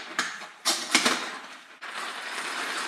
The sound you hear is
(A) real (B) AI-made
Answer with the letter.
B